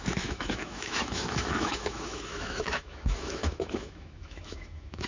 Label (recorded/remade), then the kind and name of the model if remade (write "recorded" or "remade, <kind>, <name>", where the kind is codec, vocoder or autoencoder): remade, autoencoder, DAC-VAE